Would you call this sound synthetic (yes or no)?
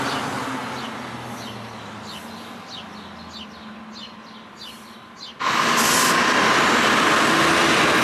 no